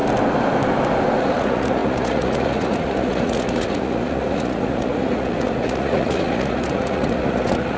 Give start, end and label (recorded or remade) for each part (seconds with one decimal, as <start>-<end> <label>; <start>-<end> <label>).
0.0-1.2 recorded; 1.2-7.8 remade